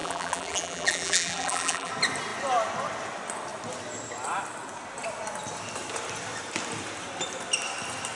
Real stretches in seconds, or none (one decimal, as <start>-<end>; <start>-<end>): 1.9-8.2